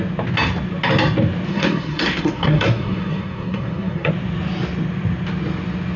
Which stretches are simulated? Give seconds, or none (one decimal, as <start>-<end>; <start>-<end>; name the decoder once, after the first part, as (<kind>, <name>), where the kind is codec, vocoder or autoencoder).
1.5-4.1 (codec, SNAC)